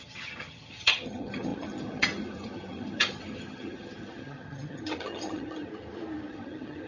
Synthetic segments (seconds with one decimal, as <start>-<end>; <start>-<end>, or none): 0.0-5.7; 6.3-6.9